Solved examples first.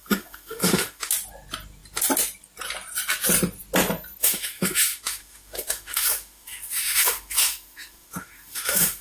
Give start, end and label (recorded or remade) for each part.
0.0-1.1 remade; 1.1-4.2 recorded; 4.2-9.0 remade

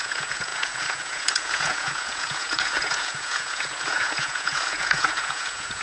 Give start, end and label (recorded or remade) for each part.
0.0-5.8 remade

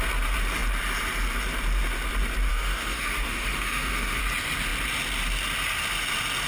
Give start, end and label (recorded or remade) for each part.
0.0-2.5 recorded; 2.5-4.2 remade; 4.2-6.5 recorded